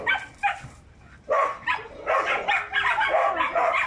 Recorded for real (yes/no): yes